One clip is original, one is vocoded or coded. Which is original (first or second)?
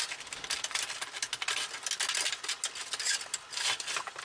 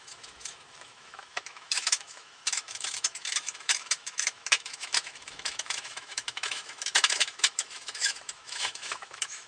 first